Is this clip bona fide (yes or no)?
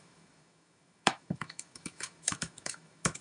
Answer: no